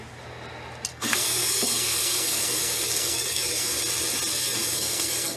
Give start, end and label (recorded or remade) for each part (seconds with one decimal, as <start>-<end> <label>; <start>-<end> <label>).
0.0-0.9 recorded; 0.9-3.8 remade; 3.8-4.3 recorded; 4.3-5.4 remade